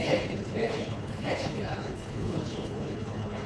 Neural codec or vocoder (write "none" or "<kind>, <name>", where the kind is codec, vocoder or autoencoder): codec, HILCodec